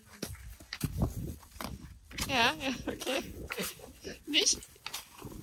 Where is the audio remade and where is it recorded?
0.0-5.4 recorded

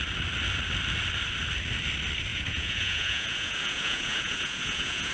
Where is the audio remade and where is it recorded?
0.0-2.3 recorded; 2.3-5.1 remade

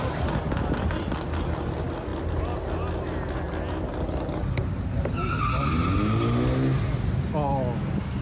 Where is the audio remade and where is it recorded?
0.0-8.2 recorded

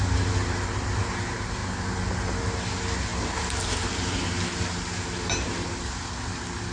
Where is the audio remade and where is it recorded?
0.0-6.7 recorded

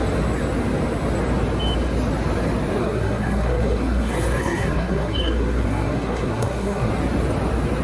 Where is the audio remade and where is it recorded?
0.0-2.8 recorded; 2.8-6.9 remade; 6.9-7.8 recorded

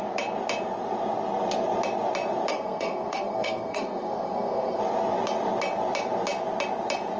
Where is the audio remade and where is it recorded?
0.0-2.5 recorded; 2.5-4.8 remade; 4.8-7.2 recorded